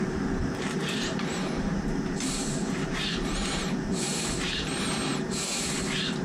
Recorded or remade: remade